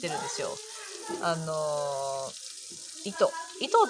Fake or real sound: real